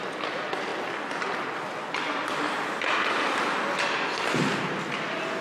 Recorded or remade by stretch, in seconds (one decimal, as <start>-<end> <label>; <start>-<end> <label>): 0.0-5.4 recorded